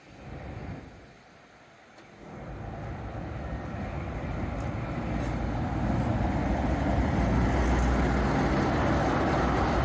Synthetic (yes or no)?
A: no